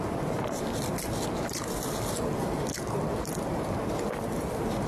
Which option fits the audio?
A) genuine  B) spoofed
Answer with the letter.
B